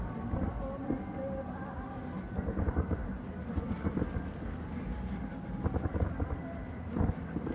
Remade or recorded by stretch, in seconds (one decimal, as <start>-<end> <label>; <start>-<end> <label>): 0.0-7.5 recorded